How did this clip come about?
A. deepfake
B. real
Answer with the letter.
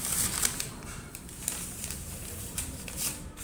A